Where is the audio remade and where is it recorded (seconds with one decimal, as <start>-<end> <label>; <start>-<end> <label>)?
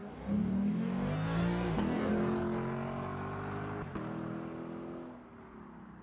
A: 0.0-2.1 remade; 2.1-6.0 recorded